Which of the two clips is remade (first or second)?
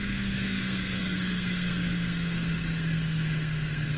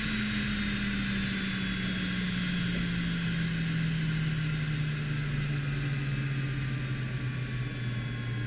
first